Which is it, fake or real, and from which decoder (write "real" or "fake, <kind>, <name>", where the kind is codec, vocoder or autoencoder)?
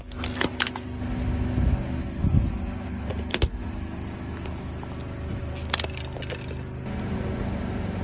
real